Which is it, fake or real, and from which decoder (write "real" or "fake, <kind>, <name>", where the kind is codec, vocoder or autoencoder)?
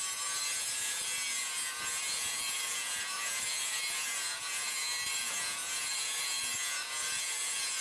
fake, vocoder, Vocos